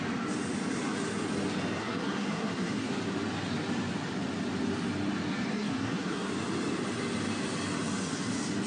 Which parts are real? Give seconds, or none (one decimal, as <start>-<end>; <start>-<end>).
0.0-1.8; 2.9-5.5; 6.3-8.7